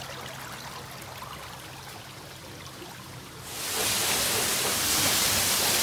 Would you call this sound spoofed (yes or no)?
no